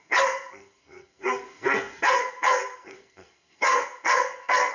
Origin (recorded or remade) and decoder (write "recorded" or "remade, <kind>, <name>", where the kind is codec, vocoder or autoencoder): remade, codec, SNAC